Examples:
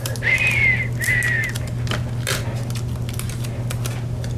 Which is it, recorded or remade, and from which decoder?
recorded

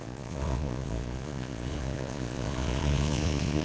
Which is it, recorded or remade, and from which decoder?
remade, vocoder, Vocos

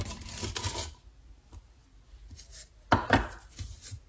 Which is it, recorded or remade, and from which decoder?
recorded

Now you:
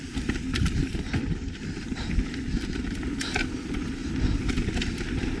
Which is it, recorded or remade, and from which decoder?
remade, vocoder, BigVGAN v2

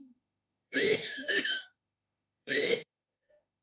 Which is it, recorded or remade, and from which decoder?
remade, autoencoder, DAC-VAE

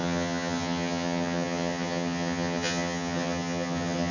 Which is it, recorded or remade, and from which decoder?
remade, vocoder, HiFi-GAN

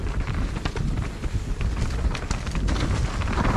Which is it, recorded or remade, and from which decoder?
recorded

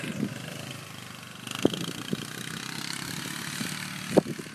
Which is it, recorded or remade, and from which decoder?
recorded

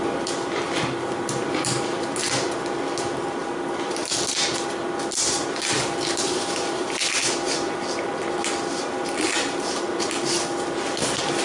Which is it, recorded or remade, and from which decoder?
recorded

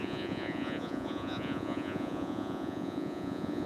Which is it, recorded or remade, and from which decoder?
remade, vocoder, Vocos